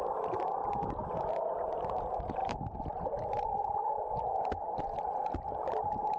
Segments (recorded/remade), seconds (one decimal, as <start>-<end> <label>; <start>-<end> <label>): 0.0-6.2 recorded